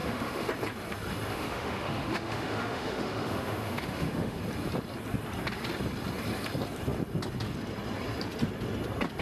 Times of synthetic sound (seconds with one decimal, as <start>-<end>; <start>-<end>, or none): 0.0-0.5; 1.3-4.4